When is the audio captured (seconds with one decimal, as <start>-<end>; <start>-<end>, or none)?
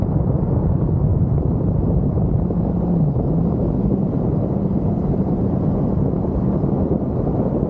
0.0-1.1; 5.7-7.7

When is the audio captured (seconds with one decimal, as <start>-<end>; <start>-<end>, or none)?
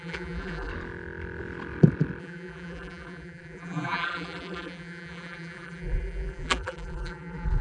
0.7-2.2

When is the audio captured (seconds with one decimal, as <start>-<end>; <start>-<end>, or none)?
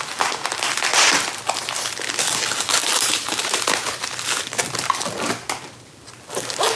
0.0-2.8; 4.2-6.8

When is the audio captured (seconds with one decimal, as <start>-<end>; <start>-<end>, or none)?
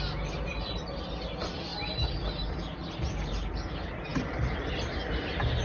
0.0-1.7; 2.2-5.6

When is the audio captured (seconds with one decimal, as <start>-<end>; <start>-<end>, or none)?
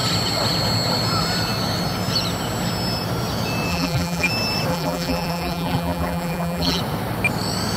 0.0-3.7; 4.3-4.7; 6.8-7.8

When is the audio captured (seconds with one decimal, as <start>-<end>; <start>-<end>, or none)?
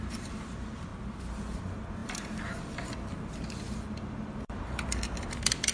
0.9-1.6